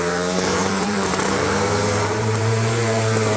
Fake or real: fake